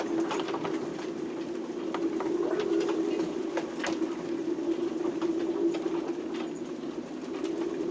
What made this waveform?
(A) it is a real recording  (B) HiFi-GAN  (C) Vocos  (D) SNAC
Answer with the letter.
A